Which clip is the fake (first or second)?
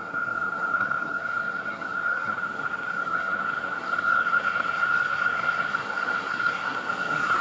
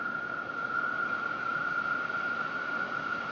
first